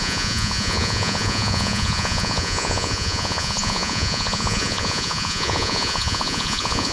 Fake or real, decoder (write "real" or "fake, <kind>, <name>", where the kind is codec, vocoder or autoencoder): fake, vocoder, Vocos